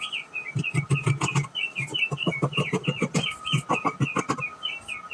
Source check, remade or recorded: recorded